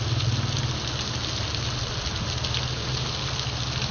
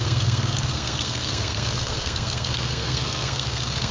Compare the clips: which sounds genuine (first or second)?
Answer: first